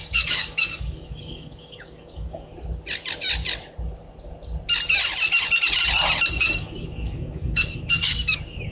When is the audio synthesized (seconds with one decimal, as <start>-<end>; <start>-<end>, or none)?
0.0-2.5; 6.3-8.7